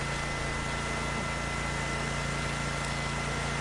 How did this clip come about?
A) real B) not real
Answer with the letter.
A